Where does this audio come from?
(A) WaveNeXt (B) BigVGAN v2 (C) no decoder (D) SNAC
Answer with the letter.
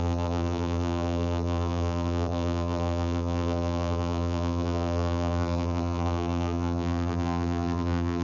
B